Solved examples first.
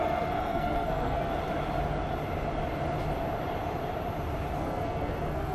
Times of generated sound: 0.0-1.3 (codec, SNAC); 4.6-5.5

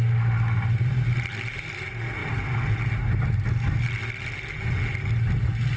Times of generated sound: none

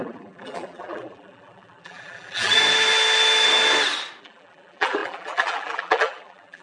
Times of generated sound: 0.0-2.6 (vocoder, BigVGAN v2); 4.2-6.6

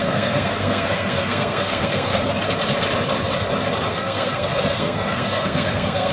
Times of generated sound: 0.0-2.1 (codec, SNAC); 3.9-6.1

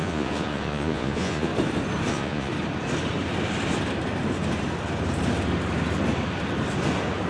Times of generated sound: 0.0-1.5 (vocoder, Vocos); 2.1-2.5

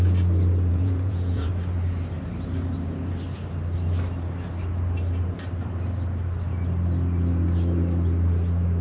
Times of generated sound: 0.7-1.5 (vocoder, Vocos)